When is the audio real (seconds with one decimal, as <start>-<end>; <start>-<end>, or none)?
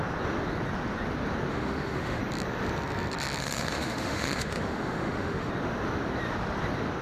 0.0-1.5; 2.2-3.4; 5.5-7.0